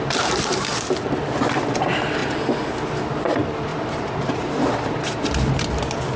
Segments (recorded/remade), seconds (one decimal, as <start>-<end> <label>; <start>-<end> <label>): 0.0-3.7 recorded; 3.7-5.5 remade; 5.5-6.2 recorded